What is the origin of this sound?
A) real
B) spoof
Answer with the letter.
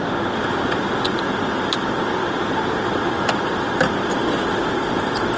A